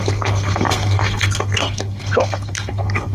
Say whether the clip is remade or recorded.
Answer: remade